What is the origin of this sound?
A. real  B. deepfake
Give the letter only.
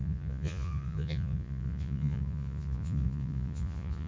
B